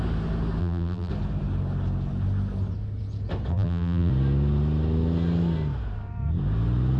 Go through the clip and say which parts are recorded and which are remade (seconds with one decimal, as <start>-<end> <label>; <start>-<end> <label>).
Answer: 0.0-0.6 recorded; 0.6-1.1 remade; 1.1-3.5 recorded; 3.5-4.1 remade; 4.1-7.0 recorded